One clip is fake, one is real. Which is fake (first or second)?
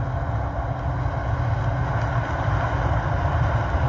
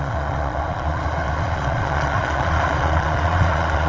second